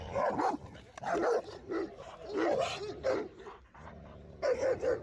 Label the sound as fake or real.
real